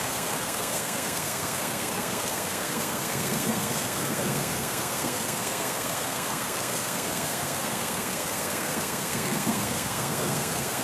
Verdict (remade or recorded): remade